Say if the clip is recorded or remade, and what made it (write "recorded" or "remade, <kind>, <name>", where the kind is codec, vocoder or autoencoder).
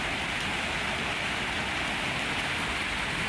recorded